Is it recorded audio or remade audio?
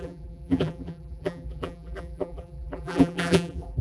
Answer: remade